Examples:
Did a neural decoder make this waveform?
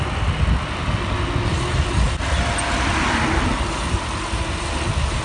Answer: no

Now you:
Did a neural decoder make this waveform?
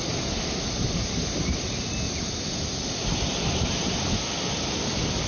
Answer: no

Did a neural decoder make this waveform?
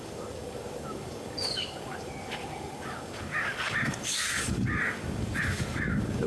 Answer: yes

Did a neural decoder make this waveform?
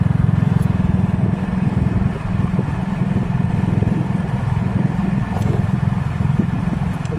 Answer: no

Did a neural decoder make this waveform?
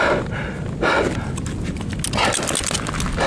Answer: no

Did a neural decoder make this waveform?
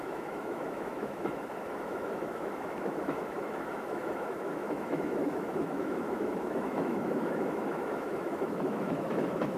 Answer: yes